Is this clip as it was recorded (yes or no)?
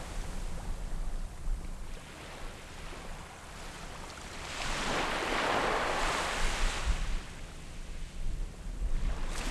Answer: yes